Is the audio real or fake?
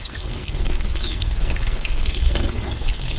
fake